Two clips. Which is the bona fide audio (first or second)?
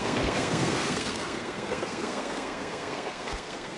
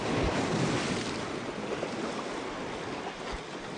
second